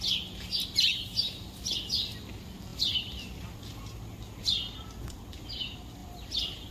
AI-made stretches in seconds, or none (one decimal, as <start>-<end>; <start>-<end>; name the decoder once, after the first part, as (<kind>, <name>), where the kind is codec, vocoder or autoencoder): 0.9-1.6 (vocoder, BigVGAN v2); 6.0-6.7